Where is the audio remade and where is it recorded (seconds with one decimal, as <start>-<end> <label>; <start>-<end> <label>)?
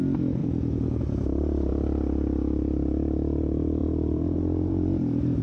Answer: 0.0-0.4 recorded; 0.4-1.0 remade; 1.0-3.8 recorded; 3.8-5.4 remade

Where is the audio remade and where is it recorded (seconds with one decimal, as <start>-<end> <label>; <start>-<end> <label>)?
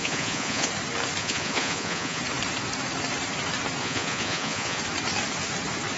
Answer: 0.0-0.7 remade; 0.7-1.2 recorded; 1.2-2.2 remade; 2.2-3.8 recorded; 3.8-4.8 remade; 4.8-6.0 recorded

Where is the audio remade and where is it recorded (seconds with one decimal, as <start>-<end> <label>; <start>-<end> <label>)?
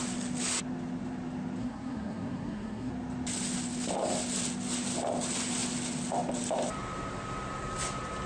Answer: 0.0-1.6 recorded; 1.6-2.9 remade; 2.9-8.3 recorded